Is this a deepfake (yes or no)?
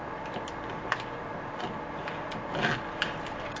no